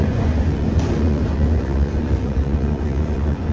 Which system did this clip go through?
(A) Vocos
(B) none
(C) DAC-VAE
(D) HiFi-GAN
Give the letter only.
A